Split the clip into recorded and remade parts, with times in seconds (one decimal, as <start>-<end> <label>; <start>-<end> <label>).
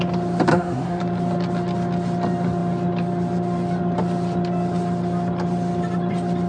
0.0-0.5 recorded; 0.5-1.0 remade; 1.0-6.5 recorded